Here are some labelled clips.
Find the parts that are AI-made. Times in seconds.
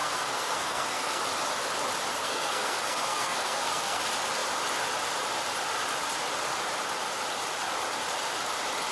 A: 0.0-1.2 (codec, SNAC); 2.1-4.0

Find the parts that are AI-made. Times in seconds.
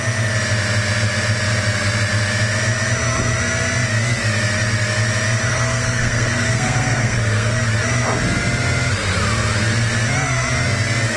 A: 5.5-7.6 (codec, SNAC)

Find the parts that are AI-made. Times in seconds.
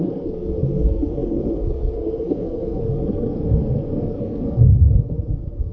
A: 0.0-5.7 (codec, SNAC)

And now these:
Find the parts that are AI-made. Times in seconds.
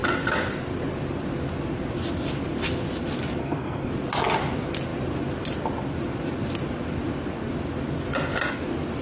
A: 3.4-3.9 (codec, SNAC)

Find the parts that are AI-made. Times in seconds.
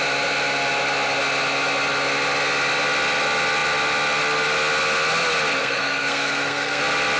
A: 5.6-6.8 (codec, SNAC)